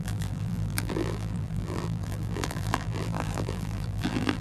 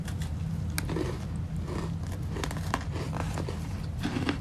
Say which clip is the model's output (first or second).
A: first